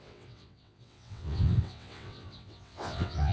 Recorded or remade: remade